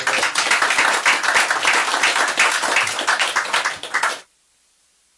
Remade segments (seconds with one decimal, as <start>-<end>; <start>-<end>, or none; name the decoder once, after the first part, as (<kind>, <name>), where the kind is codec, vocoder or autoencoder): none